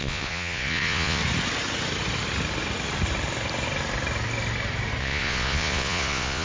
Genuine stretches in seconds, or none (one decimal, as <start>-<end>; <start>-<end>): 1.2-5.0